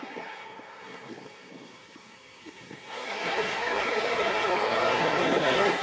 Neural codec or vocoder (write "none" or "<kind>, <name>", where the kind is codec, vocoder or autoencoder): codec, SNAC